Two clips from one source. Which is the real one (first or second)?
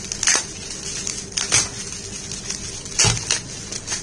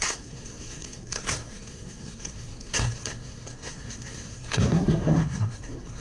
first